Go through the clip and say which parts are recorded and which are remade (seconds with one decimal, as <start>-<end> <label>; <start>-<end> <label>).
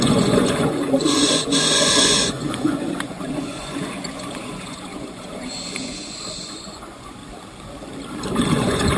0.0-7.2 remade; 7.2-8.5 recorded; 8.5-9.0 remade